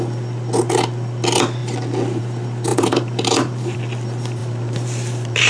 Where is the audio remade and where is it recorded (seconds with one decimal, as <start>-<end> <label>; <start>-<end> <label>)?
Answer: 0.0-2.7 recorded; 2.7-3.8 remade; 3.8-4.4 recorded; 4.4-5.5 remade